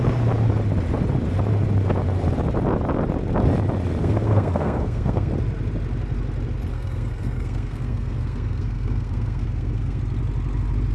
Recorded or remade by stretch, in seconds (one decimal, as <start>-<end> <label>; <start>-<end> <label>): 0.0-4.0 recorded; 4.0-5.3 remade; 5.3-6.7 recorded; 6.7-10.0 remade; 10.0-10.9 recorded